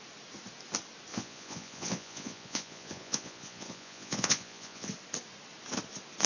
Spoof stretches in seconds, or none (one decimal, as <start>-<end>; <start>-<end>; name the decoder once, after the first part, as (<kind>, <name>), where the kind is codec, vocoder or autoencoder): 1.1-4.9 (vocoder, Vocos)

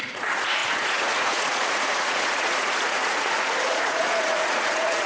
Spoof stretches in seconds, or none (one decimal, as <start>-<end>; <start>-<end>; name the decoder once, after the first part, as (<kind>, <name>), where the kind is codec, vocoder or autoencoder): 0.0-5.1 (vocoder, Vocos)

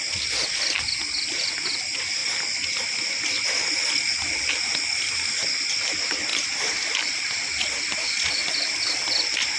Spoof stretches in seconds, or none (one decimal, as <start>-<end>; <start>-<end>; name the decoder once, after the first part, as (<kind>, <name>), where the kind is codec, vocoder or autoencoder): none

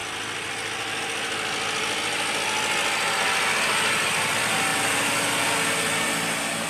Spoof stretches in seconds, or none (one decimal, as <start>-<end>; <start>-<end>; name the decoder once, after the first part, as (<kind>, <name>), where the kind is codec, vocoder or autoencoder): none